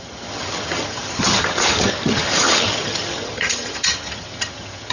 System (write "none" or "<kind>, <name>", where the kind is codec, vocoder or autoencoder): vocoder, HiFi-GAN